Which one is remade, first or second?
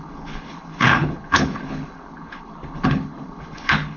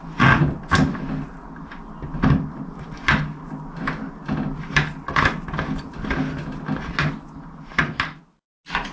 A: first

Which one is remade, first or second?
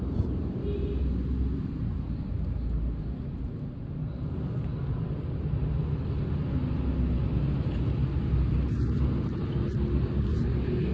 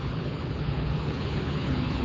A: second